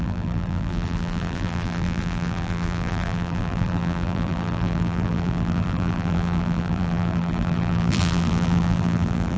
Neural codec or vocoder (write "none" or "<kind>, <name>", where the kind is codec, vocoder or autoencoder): vocoder, BigVGAN v2